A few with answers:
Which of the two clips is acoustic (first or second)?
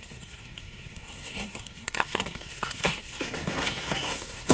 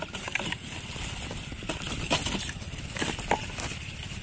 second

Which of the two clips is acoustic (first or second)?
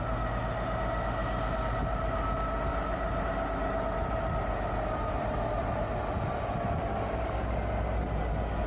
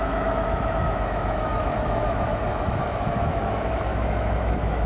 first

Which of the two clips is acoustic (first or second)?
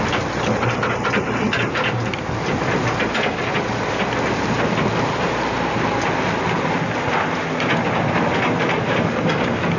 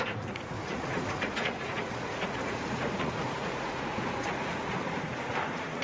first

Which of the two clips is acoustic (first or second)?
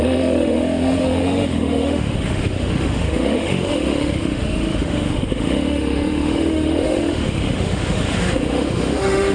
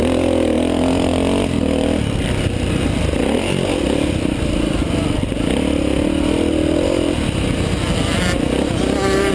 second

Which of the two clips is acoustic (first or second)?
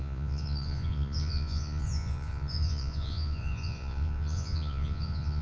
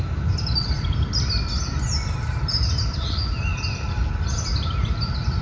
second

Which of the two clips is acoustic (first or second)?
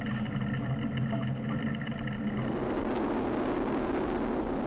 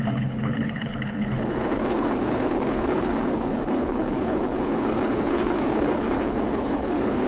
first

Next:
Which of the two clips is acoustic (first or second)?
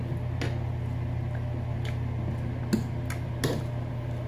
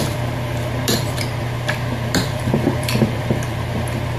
first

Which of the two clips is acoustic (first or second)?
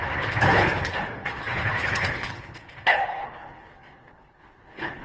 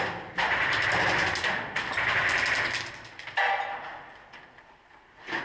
second